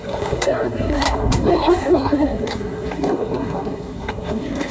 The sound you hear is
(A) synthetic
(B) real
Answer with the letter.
A